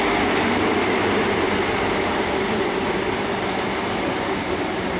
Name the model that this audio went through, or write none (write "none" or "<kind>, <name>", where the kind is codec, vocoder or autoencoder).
vocoder, BigVGAN v2